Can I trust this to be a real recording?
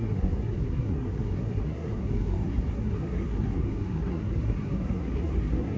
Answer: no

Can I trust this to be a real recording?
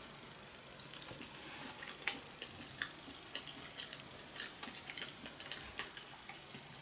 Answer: yes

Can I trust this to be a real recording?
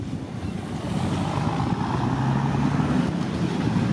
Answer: yes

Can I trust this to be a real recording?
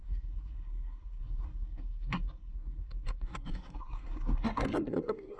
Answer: no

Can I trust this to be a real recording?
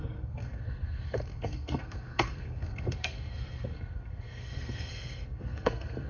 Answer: no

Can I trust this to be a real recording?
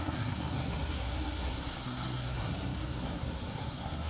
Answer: no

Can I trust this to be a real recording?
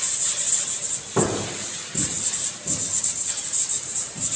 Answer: yes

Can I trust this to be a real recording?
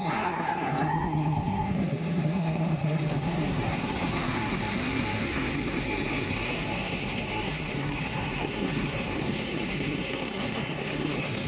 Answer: no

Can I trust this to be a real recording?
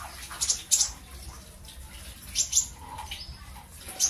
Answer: yes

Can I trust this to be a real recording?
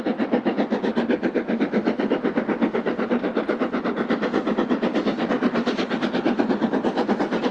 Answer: yes